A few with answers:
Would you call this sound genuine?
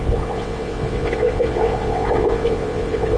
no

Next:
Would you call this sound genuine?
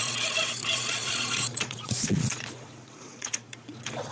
no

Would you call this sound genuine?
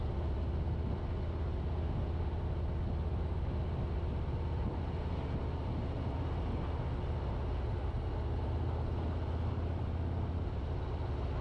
yes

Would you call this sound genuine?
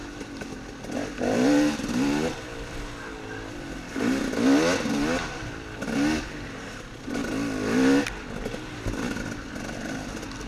yes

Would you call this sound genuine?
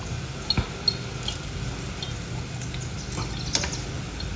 yes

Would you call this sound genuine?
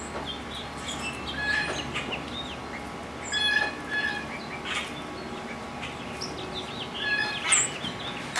yes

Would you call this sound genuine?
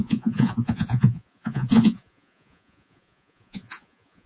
no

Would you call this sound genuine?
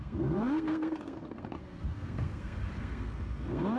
no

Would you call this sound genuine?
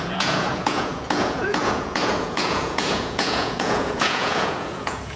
no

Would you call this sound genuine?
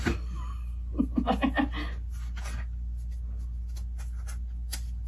yes